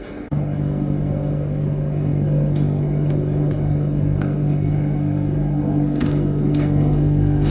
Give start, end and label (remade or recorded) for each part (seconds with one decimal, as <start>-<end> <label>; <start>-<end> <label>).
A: 0.0-7.5 remade